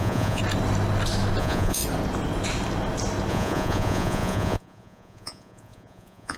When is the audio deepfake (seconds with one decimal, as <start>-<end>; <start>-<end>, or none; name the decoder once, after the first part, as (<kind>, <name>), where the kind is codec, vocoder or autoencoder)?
0.0-0.4 (vocoder, Vocos); 1.4-1.8; 3.3-6.4